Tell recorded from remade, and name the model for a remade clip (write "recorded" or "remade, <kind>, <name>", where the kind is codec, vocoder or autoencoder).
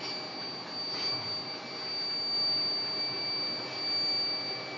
recorded